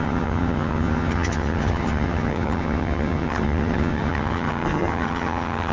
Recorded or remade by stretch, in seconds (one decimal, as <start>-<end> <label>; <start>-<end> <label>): 0.0-5.7 remade